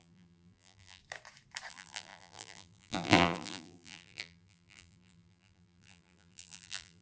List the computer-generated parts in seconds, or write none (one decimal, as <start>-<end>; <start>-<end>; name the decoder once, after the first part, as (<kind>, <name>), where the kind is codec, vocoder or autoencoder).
0.0-1.0 (vocoder, BigVGAN v2); 1.7-7.0